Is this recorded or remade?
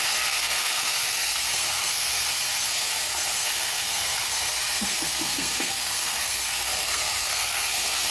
remade